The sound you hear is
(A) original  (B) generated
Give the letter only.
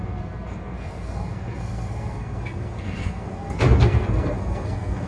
B